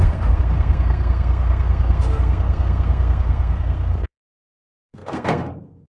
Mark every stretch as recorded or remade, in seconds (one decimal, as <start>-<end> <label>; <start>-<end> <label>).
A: 0.0-5.9 remade